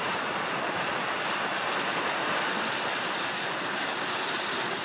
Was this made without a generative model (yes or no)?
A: yes